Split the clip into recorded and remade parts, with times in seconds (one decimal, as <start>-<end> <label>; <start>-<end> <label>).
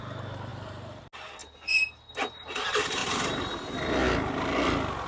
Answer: 0.0-0.5 recorded; 0.5-1.0 remade; 1.0-1.4 recorded; 1.4-2.1 remade; 2.1-3.0 recorded; 3.0-3.6 remade; 3.6-5.1 recorded